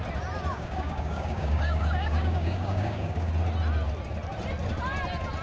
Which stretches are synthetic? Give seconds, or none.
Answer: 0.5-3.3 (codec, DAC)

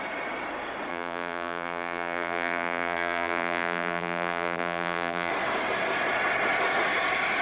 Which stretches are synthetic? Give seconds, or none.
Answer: 0.9-5.3 (vocoder, BigVGAN v2)

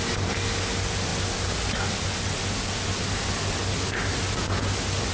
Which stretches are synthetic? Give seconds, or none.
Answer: none

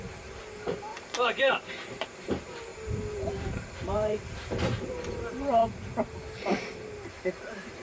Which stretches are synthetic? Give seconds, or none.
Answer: 0.0-5.6 (vocoder, BigVGAN v2); 7.1-7.8

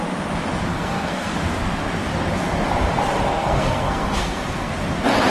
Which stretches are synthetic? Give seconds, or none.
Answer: 0.7-1.3 (codec, SNAC); 3.4-4.7

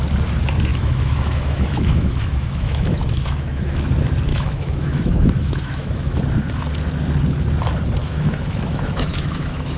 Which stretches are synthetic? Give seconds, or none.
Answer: 0.7-3.8 (autoencoder, DAC-VAE); 4.3-6.2; 8.0-9.8